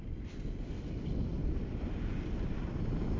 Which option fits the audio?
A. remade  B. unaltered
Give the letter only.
B